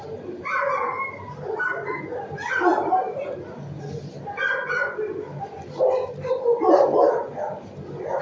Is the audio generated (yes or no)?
no